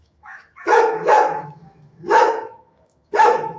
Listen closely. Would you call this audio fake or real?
fake